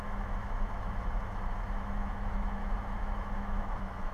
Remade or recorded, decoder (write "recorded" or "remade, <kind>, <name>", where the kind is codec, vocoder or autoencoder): remade, autoencoder, DAC-VAE